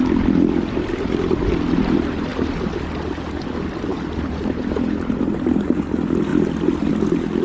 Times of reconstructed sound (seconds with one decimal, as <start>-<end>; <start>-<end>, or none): none